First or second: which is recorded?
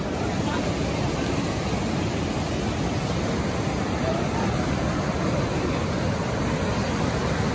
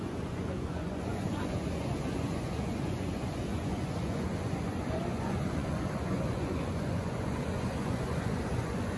first